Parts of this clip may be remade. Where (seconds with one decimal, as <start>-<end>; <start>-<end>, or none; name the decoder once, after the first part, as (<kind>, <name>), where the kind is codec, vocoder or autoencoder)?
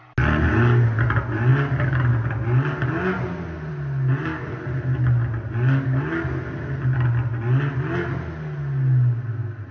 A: none